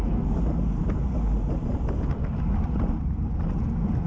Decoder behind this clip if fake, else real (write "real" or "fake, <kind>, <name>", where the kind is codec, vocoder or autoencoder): real